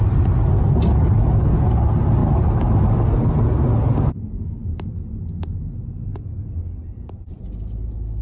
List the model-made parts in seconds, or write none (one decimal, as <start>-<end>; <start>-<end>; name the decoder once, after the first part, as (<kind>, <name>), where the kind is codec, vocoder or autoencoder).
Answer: none